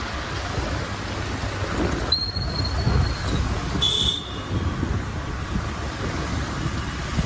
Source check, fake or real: real